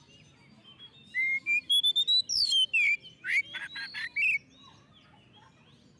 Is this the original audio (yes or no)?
yes